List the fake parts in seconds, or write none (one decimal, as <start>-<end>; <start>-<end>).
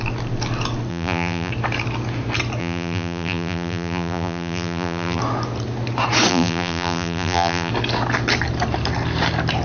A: 0.9-1.5; 2.6-5.2; 6.3-7.7